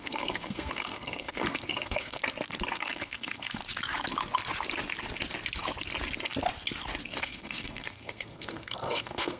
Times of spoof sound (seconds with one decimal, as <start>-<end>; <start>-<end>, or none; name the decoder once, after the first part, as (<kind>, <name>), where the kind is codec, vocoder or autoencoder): 0.0-2.2 (codec, SNAC); 2.7-3.6; 7.2-9.4